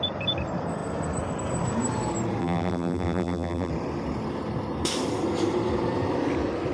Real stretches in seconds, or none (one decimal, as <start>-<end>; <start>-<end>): 0.0-2.4; 3.7-6.7